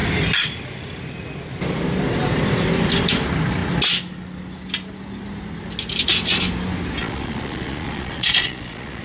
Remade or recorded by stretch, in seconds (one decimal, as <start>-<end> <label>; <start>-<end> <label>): 0.0-7.0 recorded; 7.0-9.0 remade